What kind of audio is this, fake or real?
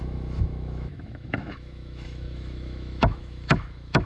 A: fake